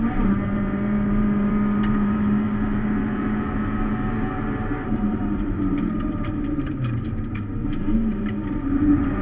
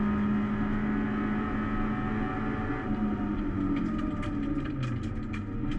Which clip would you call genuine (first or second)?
second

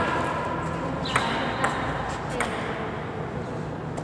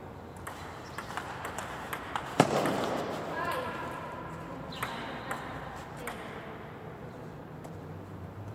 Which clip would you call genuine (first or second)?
first